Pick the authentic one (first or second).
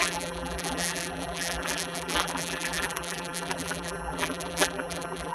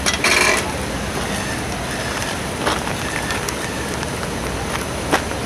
second